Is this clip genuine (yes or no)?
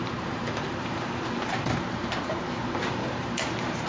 no